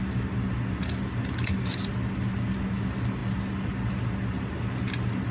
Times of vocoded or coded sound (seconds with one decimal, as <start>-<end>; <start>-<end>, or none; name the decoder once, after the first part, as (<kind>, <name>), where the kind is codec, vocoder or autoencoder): none